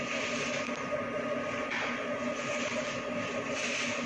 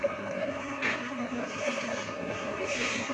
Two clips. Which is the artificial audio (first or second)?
second